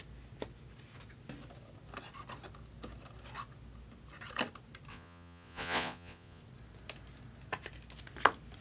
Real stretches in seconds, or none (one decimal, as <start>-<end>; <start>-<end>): 0.0-4.9; 6.4-8.6